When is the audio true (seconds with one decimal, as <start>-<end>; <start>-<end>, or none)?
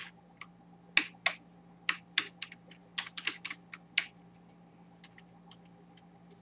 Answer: 0.0-6.4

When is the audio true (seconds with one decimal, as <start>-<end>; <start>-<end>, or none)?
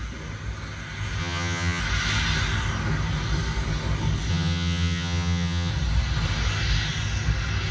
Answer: 0.0-1.2; 1.8-4.3; 5.7-7.7